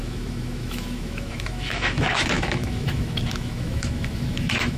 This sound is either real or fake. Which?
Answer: fake